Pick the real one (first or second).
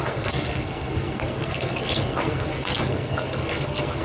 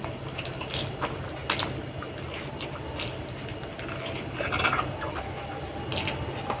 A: second